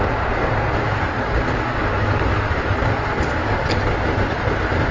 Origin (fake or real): real